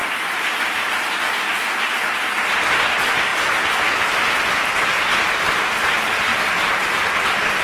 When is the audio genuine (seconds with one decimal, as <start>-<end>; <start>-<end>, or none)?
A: 0.0-7.6